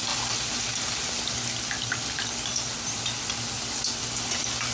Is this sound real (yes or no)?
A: yes